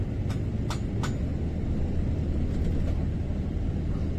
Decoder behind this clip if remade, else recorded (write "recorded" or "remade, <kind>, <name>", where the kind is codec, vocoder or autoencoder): recorded